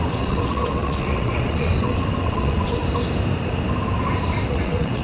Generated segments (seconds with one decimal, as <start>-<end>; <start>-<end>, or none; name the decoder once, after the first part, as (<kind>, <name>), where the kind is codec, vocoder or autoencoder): 0.0-2.8 (vocoder, WaveNeXt); 4.5-5.0